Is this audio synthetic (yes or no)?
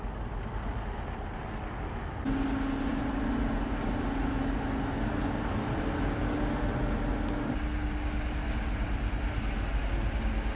no